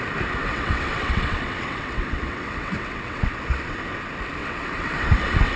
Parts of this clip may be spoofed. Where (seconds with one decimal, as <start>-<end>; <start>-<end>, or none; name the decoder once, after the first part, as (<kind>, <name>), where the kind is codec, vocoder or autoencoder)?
0.4-3.8 (vocoder, WaveNeXt); 4.4-5.6